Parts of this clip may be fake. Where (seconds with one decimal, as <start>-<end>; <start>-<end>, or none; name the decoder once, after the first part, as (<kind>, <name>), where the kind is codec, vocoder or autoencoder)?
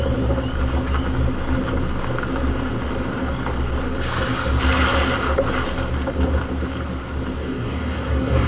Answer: 7.4-8.5 (codec, DAC)